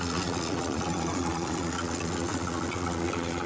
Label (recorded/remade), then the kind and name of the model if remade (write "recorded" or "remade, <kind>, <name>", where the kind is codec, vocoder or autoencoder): remade, vocoder, Vocos